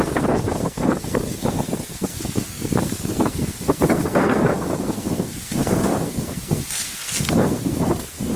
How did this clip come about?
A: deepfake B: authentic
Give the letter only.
A